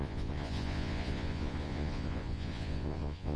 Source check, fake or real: fake